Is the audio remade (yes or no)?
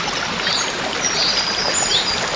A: no